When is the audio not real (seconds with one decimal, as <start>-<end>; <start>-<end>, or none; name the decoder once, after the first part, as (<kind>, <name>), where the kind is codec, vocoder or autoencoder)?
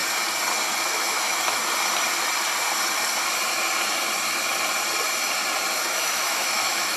0.8-1.6 (autoencoder, DAC-VAE); 5.8-7.0